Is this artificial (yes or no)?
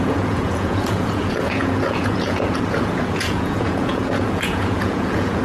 yes